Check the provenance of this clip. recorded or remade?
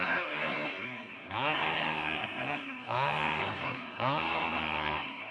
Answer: remade